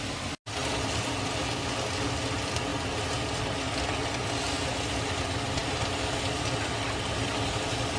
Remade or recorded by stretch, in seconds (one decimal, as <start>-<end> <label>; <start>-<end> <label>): 0.0-8.0 recorded